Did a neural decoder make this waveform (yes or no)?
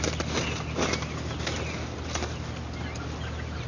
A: no